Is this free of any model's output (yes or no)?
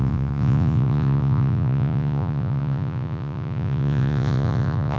no